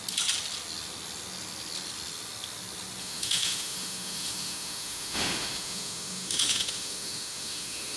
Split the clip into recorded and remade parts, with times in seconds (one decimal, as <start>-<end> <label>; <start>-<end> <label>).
0.0-3.0 recorded; 3.0-8.0 remade